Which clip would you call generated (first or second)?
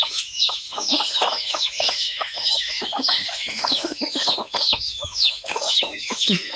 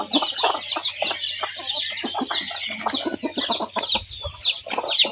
first